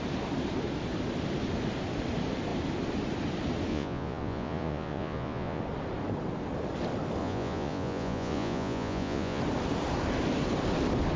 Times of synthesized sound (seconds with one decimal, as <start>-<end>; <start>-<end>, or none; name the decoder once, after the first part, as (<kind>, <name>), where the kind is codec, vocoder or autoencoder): 3.7-5.6 (vocoder, Vocos); 7.2-9.4